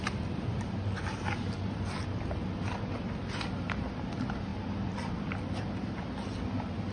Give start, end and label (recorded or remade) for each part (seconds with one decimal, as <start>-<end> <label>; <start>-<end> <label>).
0.0-6.9 recorded